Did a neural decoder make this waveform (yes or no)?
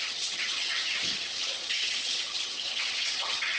yes